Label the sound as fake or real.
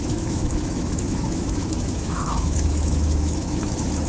fake